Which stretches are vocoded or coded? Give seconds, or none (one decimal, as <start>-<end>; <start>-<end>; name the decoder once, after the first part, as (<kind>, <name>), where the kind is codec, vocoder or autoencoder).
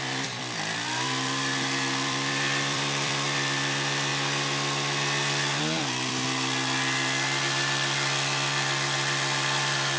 0.0-4.1 (vocoder, BigVGAN v2); 5.6-10.0